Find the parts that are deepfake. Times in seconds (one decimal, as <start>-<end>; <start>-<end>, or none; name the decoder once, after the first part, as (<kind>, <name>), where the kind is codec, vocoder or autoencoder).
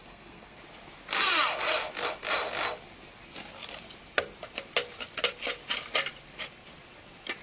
0.0-0.6 (codec, SNAC)